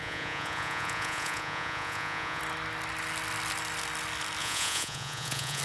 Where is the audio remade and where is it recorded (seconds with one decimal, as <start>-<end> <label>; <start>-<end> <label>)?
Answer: 0.0-2.4 remade; 2.4-4.4 recorded; 4.4-5.6 remade

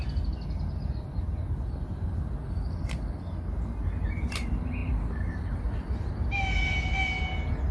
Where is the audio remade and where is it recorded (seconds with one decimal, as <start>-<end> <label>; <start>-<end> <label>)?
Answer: 0.0-7.7 recorded

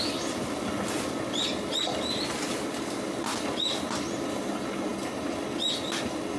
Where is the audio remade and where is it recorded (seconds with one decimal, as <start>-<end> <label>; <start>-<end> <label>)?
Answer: 0.0-6.4 recorded

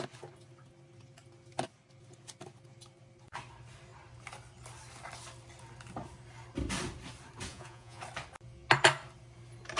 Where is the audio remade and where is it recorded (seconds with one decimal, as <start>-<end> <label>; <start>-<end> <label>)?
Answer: 0.0-7.5 recorded; 7.5-8.0 remade; 8.0-9.8 recorded

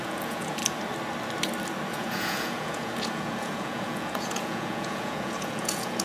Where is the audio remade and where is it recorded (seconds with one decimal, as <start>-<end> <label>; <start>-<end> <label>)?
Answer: 0.0-0.6 remade; 0.6-1.9 recorded; 1.9-6.0 remade